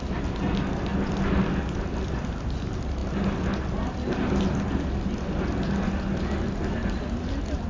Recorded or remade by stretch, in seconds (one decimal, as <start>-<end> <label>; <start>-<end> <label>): 0.0-7.7 recorded